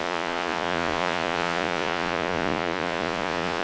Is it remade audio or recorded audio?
remade